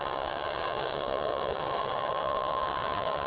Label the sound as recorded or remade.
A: remade